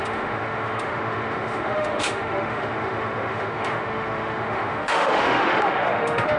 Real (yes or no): no